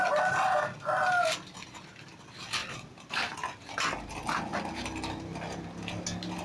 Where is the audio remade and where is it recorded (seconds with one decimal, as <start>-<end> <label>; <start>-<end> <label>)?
0.0-2.6 recorded; 2.6-3.3 remade; 3.3-6.4 recorded